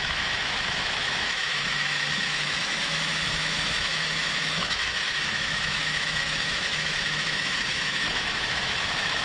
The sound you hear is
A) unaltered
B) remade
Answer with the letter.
B